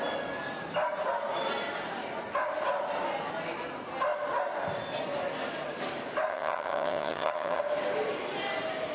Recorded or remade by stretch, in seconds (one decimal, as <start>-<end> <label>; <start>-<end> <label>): 0.0-6.3 recorded; 6.3-7.6 remade; 7.6-8.9 recorded